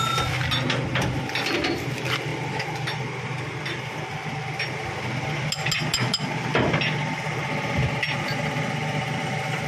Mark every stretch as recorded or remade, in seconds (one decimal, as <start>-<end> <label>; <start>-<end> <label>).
0.0-9.7 recorded